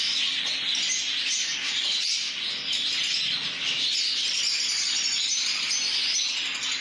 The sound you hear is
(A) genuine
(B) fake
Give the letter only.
A